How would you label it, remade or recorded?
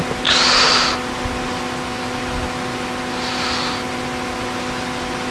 recorded